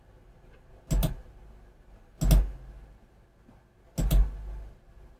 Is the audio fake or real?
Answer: real